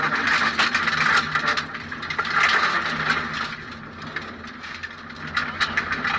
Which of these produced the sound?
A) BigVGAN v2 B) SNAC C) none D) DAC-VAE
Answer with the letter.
C